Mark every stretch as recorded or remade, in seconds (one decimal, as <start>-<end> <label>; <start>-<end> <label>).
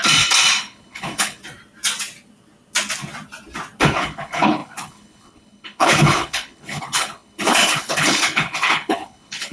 0.0-0.6 recorded; 0.6-1.4 remade; 1.4-3.8 recorded; 3.8-9.5 remade